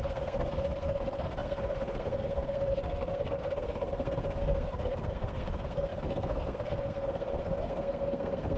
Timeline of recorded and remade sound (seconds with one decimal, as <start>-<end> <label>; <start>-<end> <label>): 0.0-8.6 remade